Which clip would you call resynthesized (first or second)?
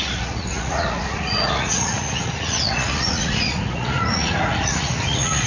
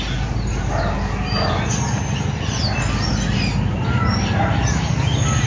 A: first